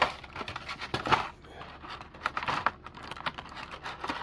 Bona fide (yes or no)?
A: yes